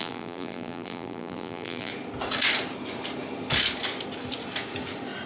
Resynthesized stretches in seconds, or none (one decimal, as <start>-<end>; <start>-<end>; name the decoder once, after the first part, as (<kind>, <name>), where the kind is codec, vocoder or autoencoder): 0.0-1.9 (vocoder, BigVGAN v2)